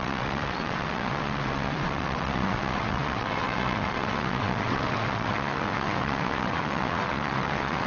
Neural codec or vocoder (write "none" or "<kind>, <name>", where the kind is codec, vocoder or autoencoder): vocoder, WaveNeXt